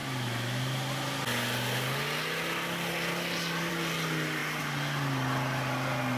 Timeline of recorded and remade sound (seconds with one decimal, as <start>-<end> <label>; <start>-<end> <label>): 0.0-6.2 recorded